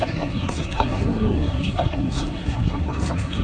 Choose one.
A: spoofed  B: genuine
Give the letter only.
A